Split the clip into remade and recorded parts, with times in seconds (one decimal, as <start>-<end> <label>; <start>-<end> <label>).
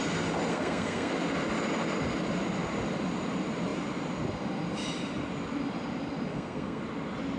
0.0-0.5 recorded; 0.5-1.1 remade; 1.1-6.3 recorded; 6.3-6.8 remade; 6.8-7.4 recorded